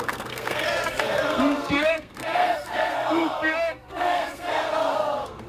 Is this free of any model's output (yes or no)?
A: no